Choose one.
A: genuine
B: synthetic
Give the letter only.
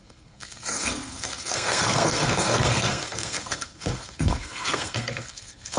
B